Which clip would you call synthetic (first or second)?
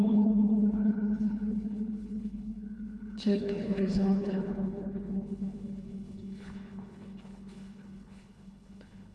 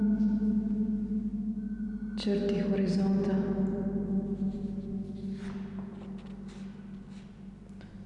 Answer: first